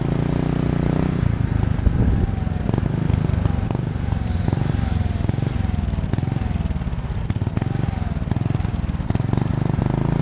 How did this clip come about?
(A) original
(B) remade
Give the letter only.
A